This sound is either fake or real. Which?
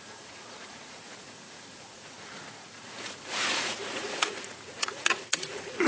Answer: fake